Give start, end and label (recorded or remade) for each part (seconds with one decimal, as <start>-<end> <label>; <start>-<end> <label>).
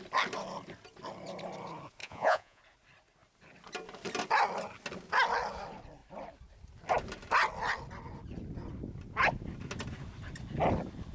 0.0-2.0 recorded; 2.0-2.6 remade; 2.6-11.1 recorded